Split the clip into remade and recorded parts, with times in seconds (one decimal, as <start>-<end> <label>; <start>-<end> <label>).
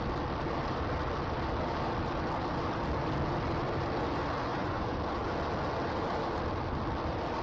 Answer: 0.0-4.5 recorded; 4.5-5.0 remade; 5.0-7.4 recorded